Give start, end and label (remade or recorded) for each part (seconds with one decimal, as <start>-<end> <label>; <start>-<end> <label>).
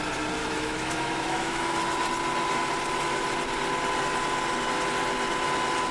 0.0-0.4 recorded; 0.4-1.8 remade; 1.8-5.9 recorded